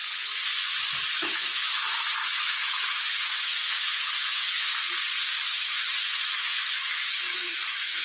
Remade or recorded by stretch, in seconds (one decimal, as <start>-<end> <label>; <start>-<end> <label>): 0.0-1.1 recorded; 1.1-4.7 remade; 4.7-5.3 recorded; 5.3-8.0 remade